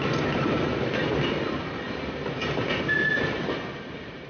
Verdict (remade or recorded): recorded